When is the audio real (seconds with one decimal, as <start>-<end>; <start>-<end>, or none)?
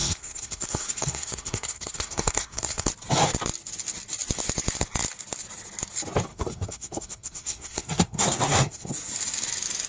2.9-6.3; 8.9-9.9